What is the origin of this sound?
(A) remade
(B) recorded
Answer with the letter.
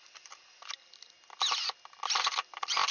B